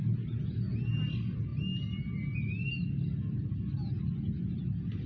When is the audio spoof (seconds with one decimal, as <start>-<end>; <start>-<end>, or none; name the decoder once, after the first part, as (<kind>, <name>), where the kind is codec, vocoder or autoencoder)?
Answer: none

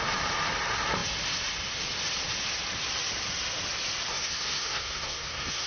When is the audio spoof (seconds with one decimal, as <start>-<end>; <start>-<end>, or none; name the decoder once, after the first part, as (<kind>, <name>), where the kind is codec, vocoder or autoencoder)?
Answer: 4.1-5.7 (codec, SNAC)